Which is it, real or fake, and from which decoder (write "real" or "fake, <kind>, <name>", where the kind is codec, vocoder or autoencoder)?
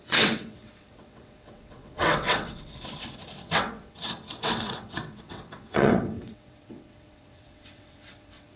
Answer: fake, vocoder, WaveNeXt